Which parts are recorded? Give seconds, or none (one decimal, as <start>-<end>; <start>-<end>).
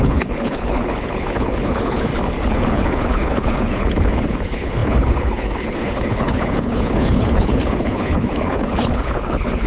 2.1-2.6